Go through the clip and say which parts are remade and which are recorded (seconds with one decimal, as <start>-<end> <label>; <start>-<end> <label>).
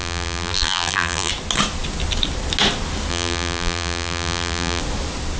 0.0-1.3 remade; 1.3-3.1 recorded; 3.1-4.8 remade; 4.8-5.4 recorded